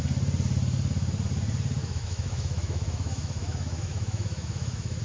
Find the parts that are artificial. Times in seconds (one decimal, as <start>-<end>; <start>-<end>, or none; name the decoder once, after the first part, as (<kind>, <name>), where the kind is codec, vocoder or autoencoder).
1.8-5.0 (autoencoder, DAC-VAE)